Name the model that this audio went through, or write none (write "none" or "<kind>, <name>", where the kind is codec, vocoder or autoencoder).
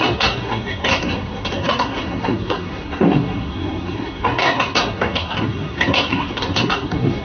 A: codec, SNAC